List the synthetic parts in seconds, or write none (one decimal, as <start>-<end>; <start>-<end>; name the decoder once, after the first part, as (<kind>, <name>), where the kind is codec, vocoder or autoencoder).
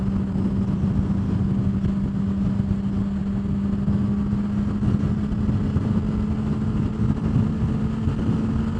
none